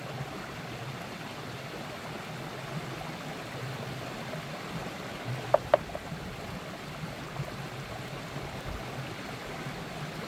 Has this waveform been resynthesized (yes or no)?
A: no